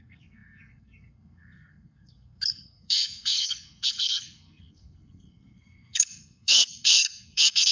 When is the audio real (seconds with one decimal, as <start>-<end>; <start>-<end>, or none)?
none